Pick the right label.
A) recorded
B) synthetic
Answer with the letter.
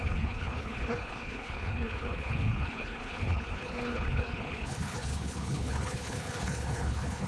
B